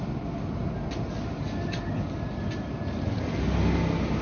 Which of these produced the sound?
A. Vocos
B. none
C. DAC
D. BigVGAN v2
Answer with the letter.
B